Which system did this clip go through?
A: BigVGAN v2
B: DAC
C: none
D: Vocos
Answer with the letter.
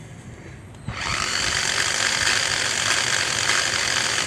C